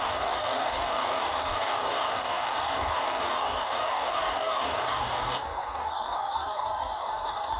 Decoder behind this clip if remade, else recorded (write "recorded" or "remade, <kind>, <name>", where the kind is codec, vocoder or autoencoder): remade, codec, DAC